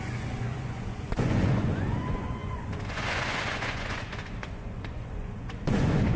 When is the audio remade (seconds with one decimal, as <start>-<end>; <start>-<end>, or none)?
0.0-6.2